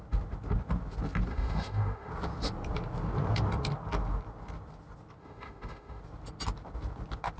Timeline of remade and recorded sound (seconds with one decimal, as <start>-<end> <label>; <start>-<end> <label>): 0.0-1.3 recorded; 1.3-2.1 remade; 2.1-5.2 recorded; 5.2-6.0 remade; 6.0-7.4 recorded